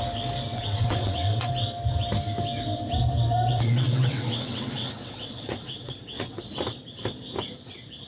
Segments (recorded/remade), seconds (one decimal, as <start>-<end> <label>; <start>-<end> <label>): 0.0-0.5 recorded; 0.5-1.5 remade; 1.5-3.5 recorded; 3.5-6.4 remade; 6.4-8.1 recorded